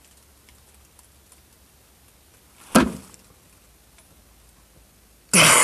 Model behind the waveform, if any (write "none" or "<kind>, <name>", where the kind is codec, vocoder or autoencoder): none